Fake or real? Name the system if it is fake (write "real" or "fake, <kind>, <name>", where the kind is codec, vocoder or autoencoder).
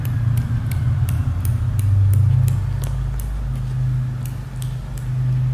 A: real